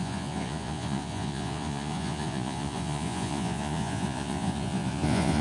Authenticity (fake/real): fake